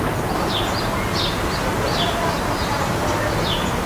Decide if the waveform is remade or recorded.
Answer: recorded